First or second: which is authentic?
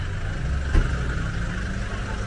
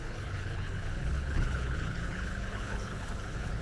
first